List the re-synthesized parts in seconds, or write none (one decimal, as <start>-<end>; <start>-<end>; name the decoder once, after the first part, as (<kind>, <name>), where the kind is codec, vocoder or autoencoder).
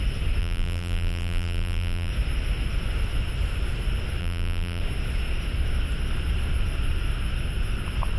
0.4-2.1 (vocoder, BigVGAN v2); 4.2-4.8